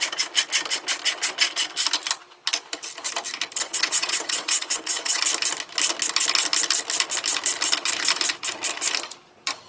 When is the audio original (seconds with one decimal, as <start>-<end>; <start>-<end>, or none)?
0.0-3.6; 5.2-9.7